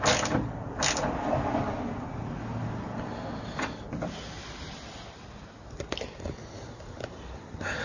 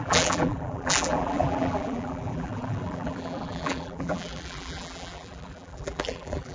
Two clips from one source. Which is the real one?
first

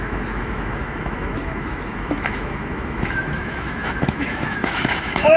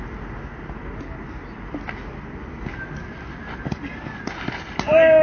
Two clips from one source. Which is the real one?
second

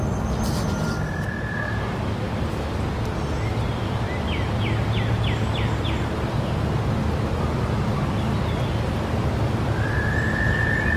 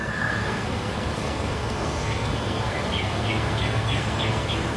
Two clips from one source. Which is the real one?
first